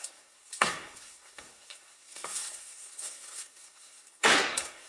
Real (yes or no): no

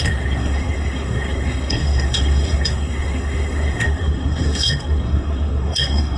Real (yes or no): no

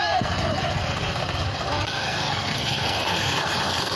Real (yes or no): no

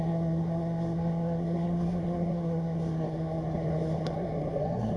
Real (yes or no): no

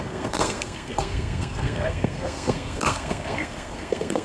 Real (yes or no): no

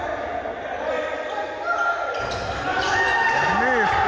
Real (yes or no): yes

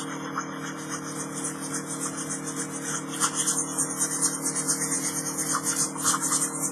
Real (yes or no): yes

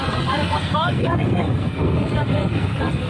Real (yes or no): no